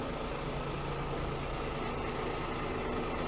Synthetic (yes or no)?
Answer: no